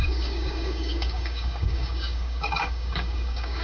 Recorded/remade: remade